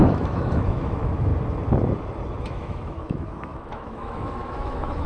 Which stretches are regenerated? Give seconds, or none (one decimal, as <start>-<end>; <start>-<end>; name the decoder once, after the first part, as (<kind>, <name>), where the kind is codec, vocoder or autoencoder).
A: 0.0-1.3 (autoencoder, DAC-VAE); 2.4-5.1